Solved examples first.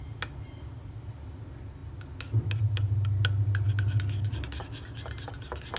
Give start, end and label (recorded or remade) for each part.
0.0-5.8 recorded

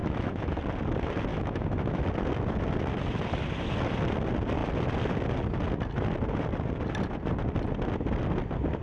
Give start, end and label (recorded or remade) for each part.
0.0-0.6 remade; 0.6-1.3 recorded; 1.3-2.0 remade; 2.0-8.8 recorded